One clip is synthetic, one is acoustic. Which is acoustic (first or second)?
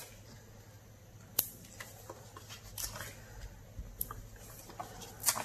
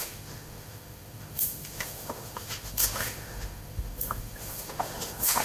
first